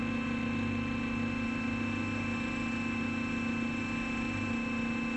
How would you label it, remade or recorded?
recorded